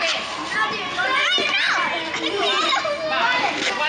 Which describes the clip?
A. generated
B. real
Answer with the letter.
B